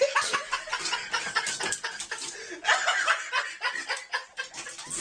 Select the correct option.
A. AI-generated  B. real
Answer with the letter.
B